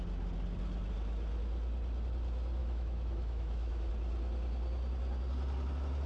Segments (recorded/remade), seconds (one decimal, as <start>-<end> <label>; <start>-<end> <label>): 0.0-2.6 recorded; 2.6-3.9 remade; 3.9-6.1 recorded